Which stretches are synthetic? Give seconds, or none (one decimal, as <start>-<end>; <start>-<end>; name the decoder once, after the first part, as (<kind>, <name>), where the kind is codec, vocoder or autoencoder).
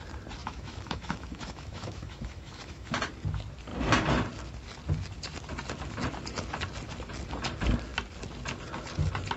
0.4-2.9 (autoencoder, DAC-VAE)